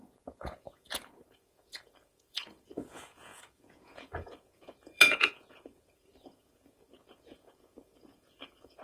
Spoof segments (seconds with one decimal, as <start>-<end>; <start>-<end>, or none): 0.0-8.8